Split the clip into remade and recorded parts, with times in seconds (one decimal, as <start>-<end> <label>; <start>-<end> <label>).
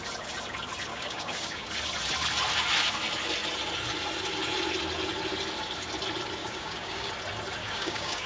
0.0-0.9 recorded; 0.9-1.7 remade; 1.7-6.4 recorded; 6.4-7.1 remade; 7.1-7.6 recorded; 7.6-8.3 remade